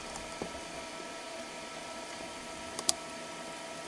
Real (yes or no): yes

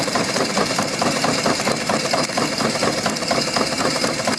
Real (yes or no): no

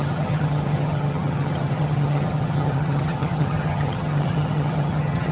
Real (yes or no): no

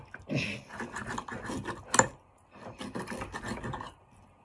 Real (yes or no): yes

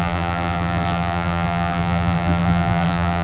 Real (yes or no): no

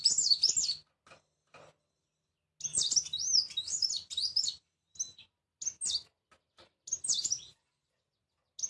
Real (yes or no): yes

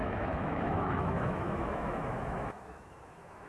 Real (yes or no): no